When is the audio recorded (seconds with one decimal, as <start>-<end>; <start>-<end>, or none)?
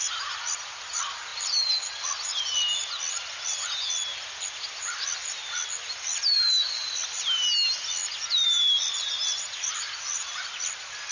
0.0-11.1